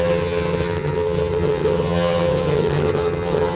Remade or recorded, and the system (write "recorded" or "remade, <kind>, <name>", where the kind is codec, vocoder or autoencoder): remade, vocoder, HiFi-GAN